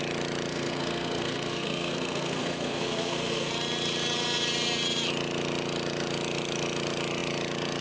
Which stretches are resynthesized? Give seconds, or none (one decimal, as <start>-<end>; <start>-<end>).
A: 0.5-3.5